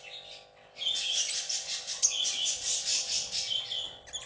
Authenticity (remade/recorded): recorded